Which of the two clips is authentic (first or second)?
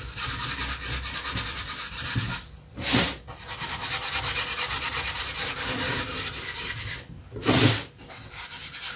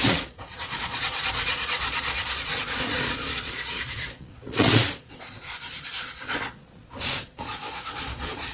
first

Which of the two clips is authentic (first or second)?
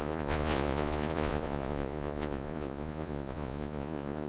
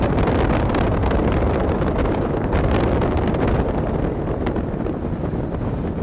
second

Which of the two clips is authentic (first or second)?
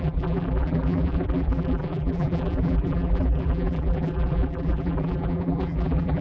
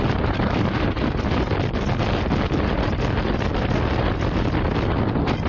second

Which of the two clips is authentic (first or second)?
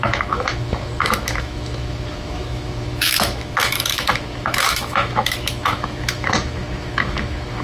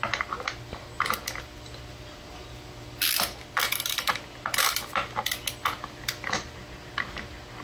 second